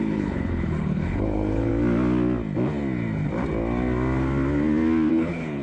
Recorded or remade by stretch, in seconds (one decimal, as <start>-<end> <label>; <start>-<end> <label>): 0.0-1.7 remade; 1.7-5.1 recorded; 5.1-5.6 remade